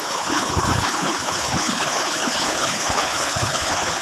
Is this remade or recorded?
remade